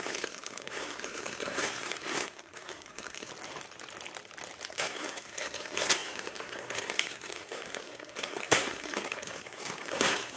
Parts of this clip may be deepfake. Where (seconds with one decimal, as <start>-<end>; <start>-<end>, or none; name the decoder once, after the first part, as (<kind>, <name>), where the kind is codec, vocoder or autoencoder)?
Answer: 0.0-3.3 (codec, SNAC); 4.7-10.4